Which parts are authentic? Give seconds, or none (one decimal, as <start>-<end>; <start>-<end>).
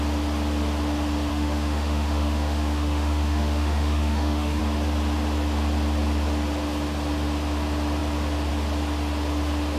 0.0-1.3; 4.6-9.8